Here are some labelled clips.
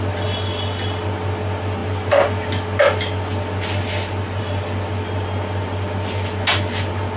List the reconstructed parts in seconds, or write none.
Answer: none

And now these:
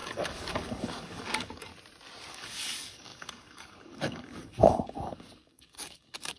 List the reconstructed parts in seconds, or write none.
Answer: 0.0-1.7 (codec, DAC); 2.3-6.4